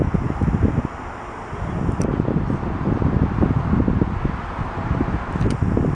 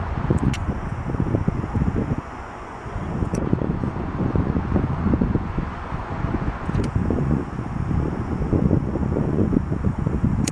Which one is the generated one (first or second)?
second